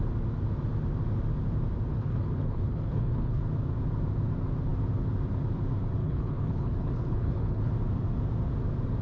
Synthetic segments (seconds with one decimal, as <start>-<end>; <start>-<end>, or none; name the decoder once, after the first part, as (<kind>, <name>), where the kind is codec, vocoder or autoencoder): 1.9-3.4 (codec, HILCodec); 6.0-7.7